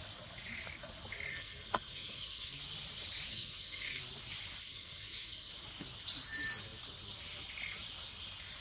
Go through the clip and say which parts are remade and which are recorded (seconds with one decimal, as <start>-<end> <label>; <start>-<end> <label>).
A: 0.0-1.3 recorded; 1.3-2.6 remade; 2.6-3.3 recorded; 3.3-4.0 remade; 4.0-4.6 recorded; 4.6-5.5 remade; 5.5-8.6 recorded